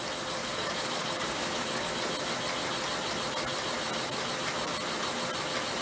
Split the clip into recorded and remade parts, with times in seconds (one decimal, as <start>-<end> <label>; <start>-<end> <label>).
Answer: 0.0-0.4 recorded; 0.4-1.9 remade; 1.9-5.8 recorded